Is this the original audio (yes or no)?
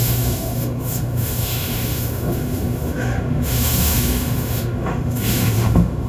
no